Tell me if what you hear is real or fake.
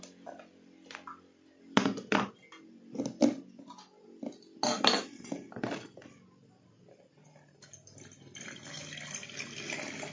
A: real